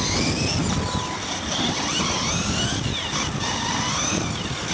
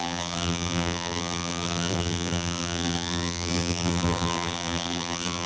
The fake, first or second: second